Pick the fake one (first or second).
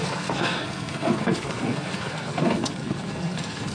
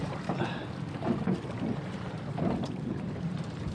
first